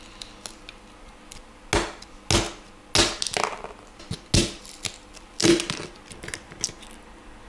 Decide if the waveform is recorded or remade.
recorded